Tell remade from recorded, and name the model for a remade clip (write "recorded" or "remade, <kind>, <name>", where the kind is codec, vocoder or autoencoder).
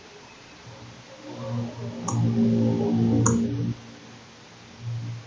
recorded